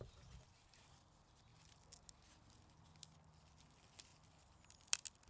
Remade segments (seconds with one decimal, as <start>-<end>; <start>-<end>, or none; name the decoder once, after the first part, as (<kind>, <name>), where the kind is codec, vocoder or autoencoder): none